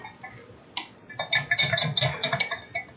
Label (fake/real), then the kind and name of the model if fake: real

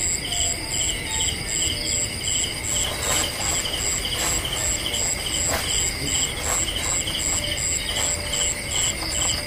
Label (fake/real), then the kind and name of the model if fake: real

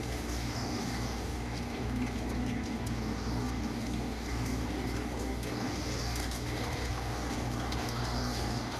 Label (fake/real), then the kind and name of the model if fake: fake, codec, DAC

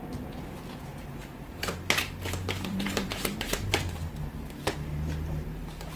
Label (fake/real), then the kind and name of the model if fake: fake, vocoder, BigVGAN v2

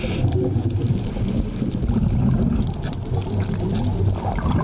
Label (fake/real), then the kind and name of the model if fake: real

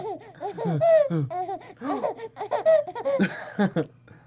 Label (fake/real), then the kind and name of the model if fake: real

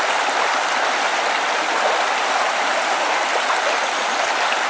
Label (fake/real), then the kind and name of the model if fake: real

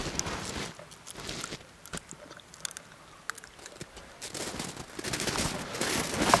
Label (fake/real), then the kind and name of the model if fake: real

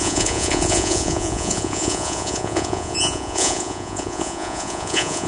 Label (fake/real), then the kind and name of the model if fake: fake, vocoder, Vocos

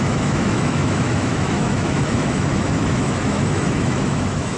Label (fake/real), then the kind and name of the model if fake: fake, autoencoder, DAC-VAE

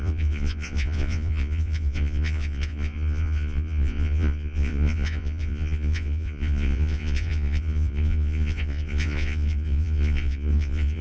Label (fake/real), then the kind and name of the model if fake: fake, vocoder, Vocos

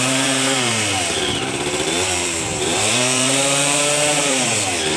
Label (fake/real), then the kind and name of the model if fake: fake, vocoder, BigVGAN v2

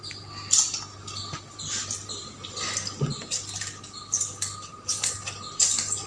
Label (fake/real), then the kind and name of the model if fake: real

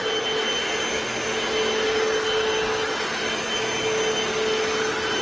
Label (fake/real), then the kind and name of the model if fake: real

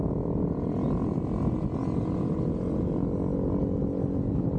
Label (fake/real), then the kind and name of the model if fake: real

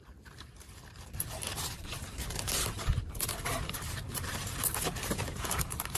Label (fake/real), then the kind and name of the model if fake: fake, vocoder, BigVGAN v2